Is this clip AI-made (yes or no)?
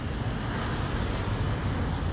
no